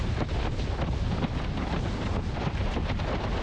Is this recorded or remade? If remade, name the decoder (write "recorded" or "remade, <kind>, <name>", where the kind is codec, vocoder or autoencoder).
recorded